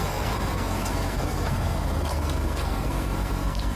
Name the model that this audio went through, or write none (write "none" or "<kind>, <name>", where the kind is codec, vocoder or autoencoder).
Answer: codec, SNAC